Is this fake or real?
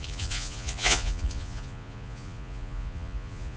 fake